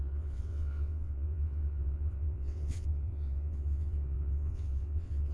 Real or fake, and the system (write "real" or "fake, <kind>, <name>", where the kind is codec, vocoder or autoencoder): fake, vocoder, WaveNeXt